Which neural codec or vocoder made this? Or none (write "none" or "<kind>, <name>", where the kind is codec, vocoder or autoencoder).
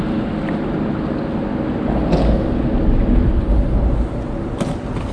none